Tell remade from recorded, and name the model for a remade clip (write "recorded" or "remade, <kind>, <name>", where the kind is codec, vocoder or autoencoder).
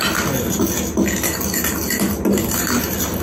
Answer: recorded